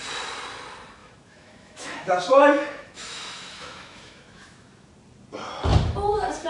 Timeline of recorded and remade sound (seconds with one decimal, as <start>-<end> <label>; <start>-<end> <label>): 0.0-1.0 recorded; 1.0-4.9 remade; 4.9-6.5 recorded